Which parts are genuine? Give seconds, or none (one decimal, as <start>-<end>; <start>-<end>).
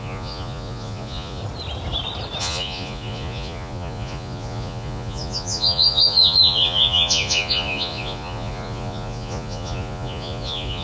1.4-2.4